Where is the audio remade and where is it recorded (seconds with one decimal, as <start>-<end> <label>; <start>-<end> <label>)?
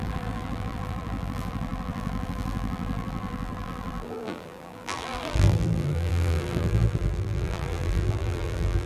0.0-8.9 remade